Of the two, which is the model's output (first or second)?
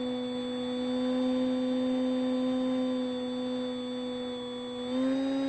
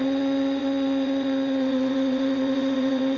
second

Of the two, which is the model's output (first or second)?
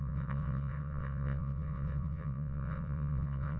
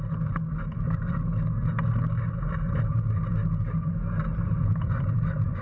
first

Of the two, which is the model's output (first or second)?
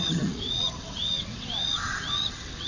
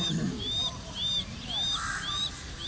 first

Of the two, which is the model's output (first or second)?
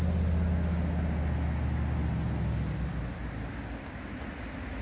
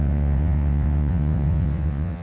second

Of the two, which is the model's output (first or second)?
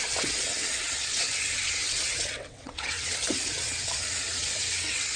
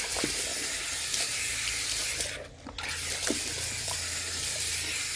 first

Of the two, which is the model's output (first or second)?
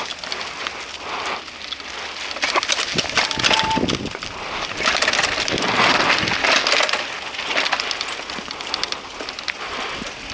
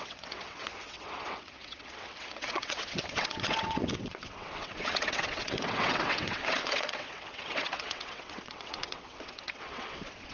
second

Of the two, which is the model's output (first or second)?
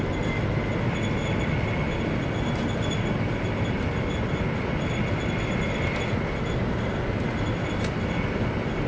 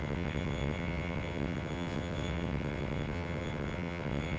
second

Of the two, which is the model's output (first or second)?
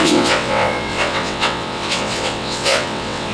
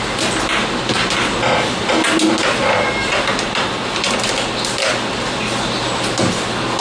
first